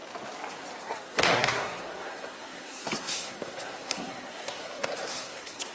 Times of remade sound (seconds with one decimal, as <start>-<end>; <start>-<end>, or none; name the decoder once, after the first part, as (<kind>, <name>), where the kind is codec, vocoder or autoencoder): 0.8-5.7 (codec, SNAC)